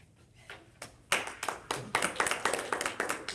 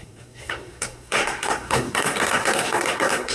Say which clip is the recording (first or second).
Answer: first